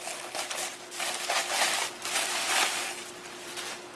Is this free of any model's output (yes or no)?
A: yes